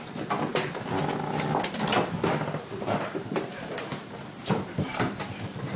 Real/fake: real